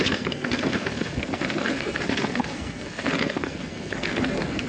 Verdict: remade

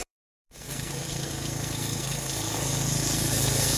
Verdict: remade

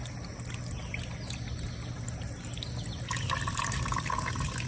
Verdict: recorded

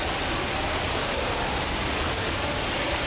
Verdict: recorded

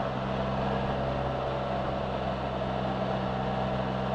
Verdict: recorded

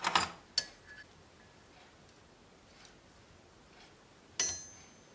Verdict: recorded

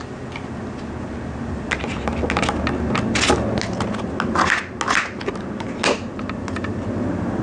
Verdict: recorded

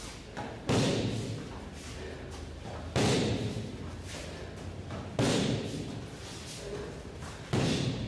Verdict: recorded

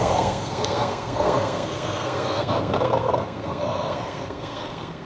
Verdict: remade